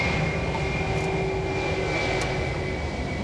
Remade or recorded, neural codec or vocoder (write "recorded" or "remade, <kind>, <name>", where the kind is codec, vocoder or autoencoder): recorded